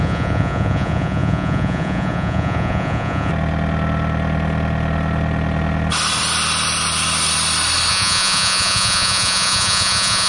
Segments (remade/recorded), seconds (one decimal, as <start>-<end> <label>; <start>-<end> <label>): 0.0-3.3 remade; 3.3-7.9 recorded; 7.9-10.3 remade